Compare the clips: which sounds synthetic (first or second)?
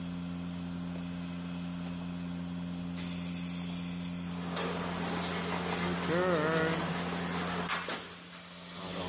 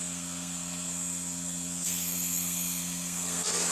second